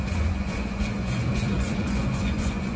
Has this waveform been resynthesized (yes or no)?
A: yes